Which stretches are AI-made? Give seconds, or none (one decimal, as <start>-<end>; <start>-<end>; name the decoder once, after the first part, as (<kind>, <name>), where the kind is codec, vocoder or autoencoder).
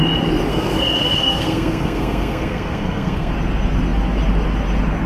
0.5-3.3 (codec, SNAC)